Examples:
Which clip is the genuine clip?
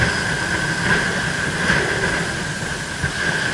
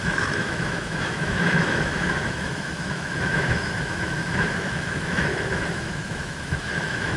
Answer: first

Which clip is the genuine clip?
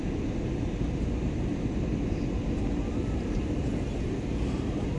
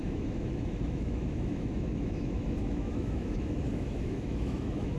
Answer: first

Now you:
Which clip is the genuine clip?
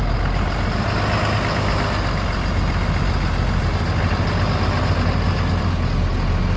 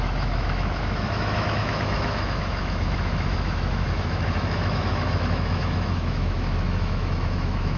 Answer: first